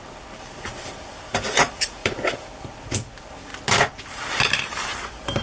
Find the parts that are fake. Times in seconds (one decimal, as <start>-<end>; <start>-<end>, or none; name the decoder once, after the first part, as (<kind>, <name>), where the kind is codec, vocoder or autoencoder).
2.0-2.7 (vocoder, BigVGAN v2)